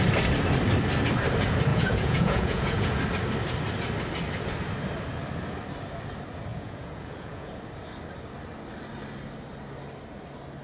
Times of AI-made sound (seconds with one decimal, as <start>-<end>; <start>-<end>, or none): 1.7-3.0; 6.5-7.6